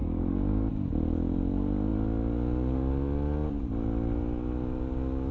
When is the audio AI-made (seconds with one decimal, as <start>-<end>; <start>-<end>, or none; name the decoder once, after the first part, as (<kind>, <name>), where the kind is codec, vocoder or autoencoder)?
0.0-0.7 (codec, DAC)

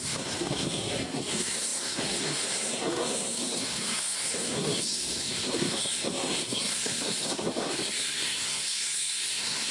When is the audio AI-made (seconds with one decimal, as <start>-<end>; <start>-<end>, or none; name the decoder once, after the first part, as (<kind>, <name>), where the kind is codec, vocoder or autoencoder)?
0.0-9.7 (codec, SNAC)

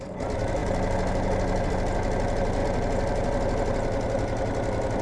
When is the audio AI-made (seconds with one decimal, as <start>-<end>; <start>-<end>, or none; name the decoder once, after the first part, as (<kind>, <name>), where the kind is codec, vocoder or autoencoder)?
none